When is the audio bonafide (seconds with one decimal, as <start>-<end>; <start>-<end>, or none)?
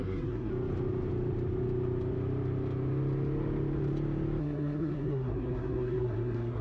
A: 0.5-4.4